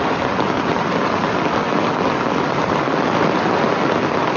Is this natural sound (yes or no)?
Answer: yes